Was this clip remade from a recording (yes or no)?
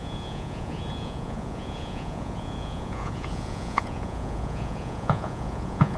yes